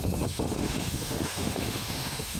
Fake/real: fake